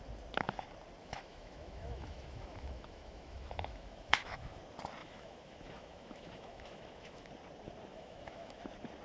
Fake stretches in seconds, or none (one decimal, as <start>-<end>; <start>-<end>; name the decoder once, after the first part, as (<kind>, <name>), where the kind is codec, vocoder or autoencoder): 1.0-4.6 (autoencoder, DAC-VAE); 5.0-7.3; 7.9-8.6